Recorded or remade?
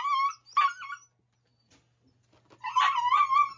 recorded